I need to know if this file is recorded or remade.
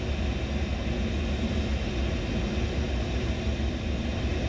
recorded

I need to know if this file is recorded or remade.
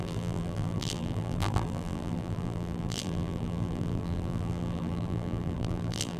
remade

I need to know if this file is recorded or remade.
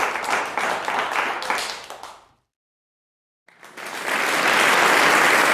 recorded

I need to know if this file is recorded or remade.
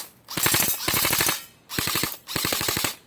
remade